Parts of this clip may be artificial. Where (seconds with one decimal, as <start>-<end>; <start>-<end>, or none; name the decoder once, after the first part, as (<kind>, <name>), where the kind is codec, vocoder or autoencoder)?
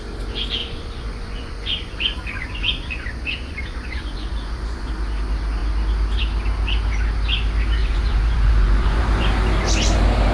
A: 0.6-4.9 (vocoder, Vocos); 7.8-9.0